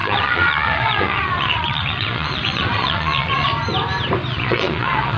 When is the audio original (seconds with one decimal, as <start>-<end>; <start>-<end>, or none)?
3.5-4.3